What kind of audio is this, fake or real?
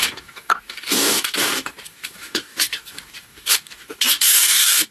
fake